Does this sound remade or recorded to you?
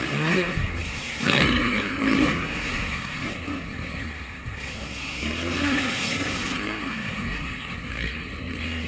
remade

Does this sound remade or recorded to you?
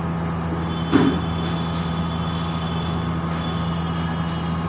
recorded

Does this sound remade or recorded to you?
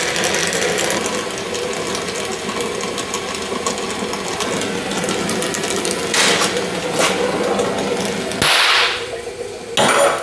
recorded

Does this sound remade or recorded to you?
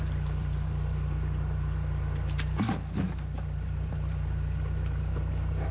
remade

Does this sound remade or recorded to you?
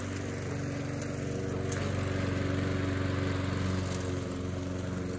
recorded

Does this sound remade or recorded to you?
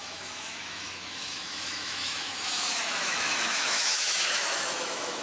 remade